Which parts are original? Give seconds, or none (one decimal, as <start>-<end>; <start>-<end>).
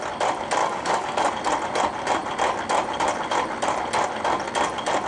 0.0-0.6; 1.3-5.1